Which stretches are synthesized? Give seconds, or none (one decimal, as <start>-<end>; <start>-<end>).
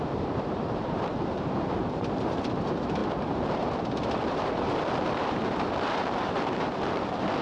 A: 0.0-7.4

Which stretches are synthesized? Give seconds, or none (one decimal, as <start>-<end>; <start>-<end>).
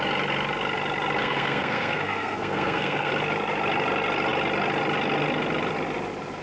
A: 1.2-3.1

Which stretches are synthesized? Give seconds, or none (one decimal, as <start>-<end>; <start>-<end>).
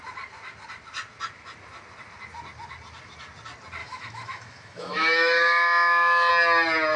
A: 3.8-6.3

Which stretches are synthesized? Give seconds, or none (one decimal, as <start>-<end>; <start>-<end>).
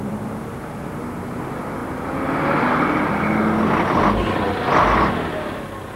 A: 0.0-1.8; 5.1-6.0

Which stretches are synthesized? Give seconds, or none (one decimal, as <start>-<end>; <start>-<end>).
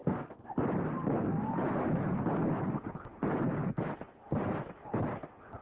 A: 0.0-0.5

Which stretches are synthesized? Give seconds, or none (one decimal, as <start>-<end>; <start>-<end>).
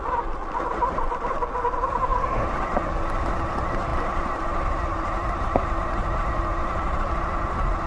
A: 2.1-3.0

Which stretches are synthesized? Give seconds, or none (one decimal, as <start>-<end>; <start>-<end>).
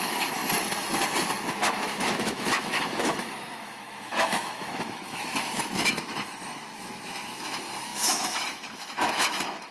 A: 0.0-0.4; 1.2-9.7